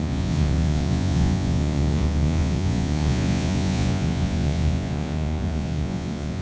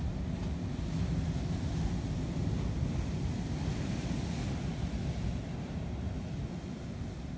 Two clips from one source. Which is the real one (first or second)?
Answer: second